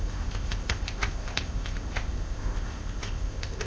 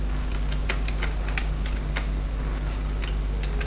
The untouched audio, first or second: second